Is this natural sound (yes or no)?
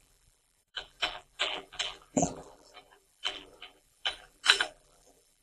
no